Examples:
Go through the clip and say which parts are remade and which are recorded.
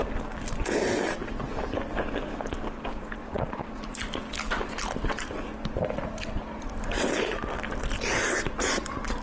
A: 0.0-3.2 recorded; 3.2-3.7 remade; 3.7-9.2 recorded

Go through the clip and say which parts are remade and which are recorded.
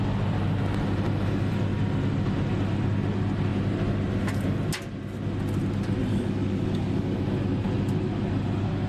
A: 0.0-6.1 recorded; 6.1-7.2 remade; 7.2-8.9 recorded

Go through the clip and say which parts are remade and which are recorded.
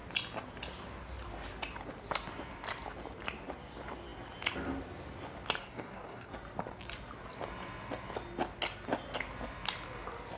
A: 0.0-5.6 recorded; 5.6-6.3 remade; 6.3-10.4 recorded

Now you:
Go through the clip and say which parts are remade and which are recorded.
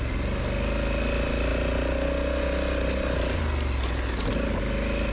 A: 0.0-5.1 recorded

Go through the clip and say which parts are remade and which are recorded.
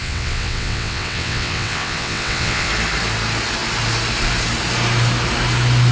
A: 0.0-2.7 remade; 2.7-5.9 recorded